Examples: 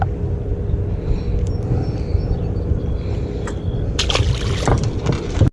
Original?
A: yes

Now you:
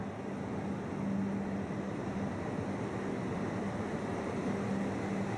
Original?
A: yes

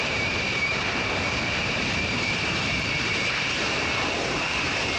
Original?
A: no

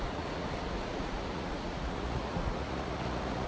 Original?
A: no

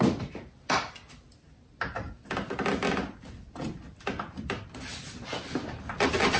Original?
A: yes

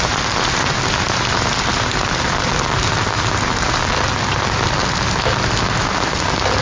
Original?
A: yes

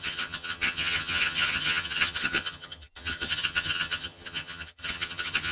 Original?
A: no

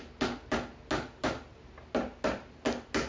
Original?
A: yes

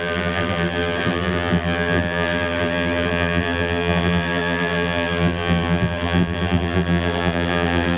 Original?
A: no